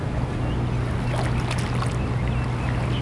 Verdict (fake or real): real